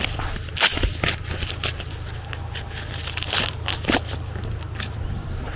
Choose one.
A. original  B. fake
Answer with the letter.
A